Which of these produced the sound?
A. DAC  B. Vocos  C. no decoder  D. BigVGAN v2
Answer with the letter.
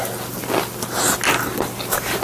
C